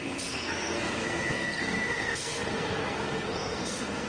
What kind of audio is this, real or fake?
fake